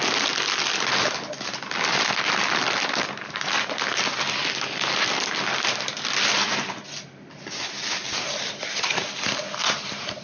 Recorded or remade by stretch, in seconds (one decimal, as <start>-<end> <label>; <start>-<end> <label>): 0.0-6.5 recorded; 6.5-9.0 remade; 9.0-10.2 recorded